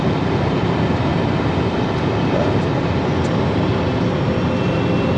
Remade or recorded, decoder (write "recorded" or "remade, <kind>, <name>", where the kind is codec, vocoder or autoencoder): recorded